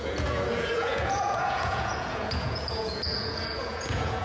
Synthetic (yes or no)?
yes